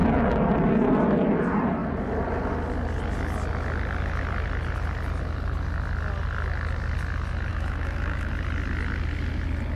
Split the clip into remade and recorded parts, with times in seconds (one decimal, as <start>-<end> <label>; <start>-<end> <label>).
0.0-7.5 recorded; 7.5-8.3 remade; 8.3-9.8 recorded